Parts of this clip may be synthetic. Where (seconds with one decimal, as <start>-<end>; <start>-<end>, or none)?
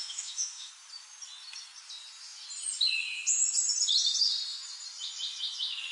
0.0-0.7